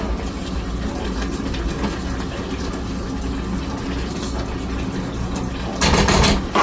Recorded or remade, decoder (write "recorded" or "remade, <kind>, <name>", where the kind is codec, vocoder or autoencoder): recorded